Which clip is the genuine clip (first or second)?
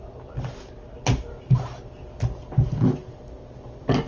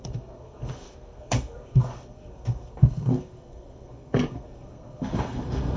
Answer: first